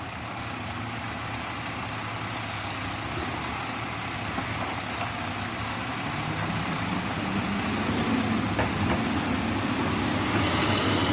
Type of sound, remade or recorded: recorded